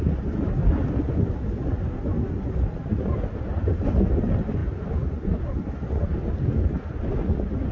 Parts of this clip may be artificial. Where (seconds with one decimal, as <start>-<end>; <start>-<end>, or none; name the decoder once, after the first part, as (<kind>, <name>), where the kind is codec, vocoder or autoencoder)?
none